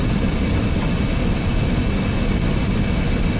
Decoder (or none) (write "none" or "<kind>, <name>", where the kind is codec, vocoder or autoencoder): none